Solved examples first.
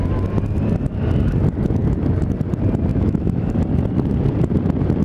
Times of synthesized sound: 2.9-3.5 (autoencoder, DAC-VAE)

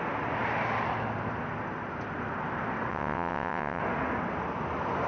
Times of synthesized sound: 2.9-3.8 (vocoder, WaveNeXt)

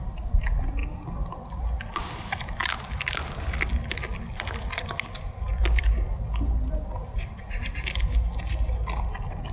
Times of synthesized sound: 4.1-5.8 (vocoder, BigVGAN v2)